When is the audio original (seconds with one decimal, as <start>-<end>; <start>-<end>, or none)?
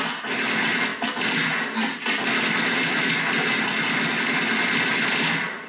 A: 0.0-5.7